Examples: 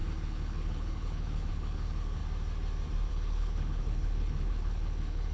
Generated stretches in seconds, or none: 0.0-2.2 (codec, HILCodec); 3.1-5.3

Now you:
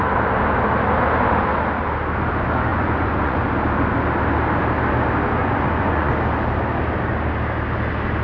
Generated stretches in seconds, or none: 2.7-3.4 (vocoder, Vocos); 5.4-6.1

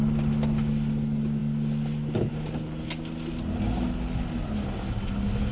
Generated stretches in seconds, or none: none